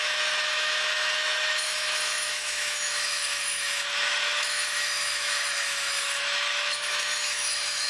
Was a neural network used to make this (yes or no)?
yes